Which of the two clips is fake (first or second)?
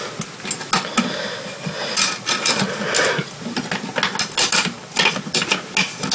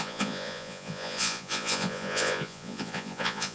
second